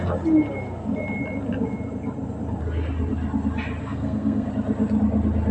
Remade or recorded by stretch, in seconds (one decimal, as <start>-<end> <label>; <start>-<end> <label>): 0.0-3.8 recorded; 3.8-4.5 remade; 4.5-5.5 recorded